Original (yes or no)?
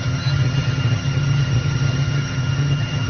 no